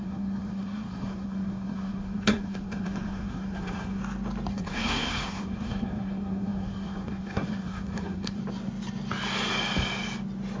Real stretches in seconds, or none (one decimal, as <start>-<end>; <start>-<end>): 4.0-4.5; 8.4-10.6